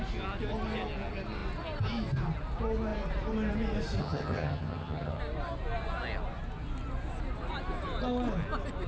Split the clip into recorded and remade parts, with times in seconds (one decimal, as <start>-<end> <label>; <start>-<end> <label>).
0.0-4.0 recorded; 4.0-5.2 remade; 5.2-8.9 recorded